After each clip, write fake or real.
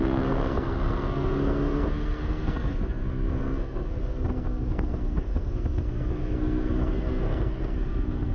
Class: fake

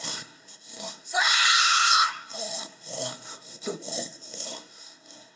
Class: fake